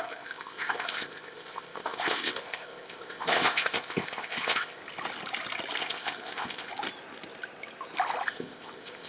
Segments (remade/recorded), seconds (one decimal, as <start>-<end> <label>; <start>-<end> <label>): 0.0-4.8 remade; 4.8-5.8 recorded; 5.8-6.7 remade; 6.7-8.3 recorded; 8.3-9.1 remade